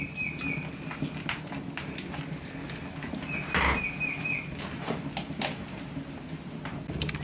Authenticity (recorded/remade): recorded